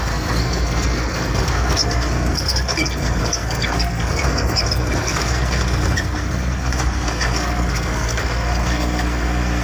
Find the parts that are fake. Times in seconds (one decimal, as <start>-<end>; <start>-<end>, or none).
0.0-9.6